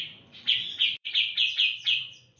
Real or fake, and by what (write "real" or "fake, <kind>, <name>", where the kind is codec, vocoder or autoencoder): fake, vocoder, Vocos